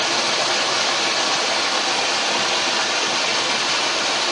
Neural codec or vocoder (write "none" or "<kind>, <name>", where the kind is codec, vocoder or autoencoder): none